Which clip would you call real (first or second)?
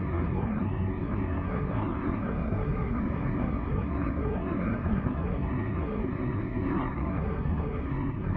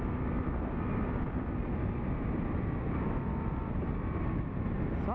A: second